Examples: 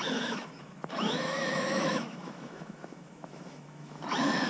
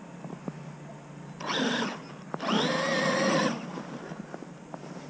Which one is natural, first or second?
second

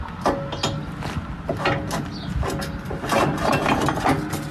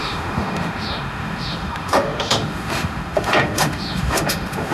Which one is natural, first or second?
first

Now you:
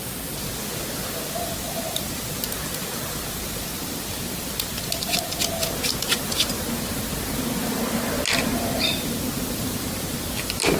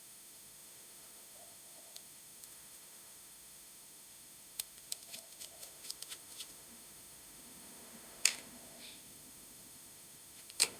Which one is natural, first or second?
first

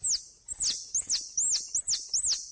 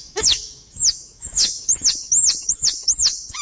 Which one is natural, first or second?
first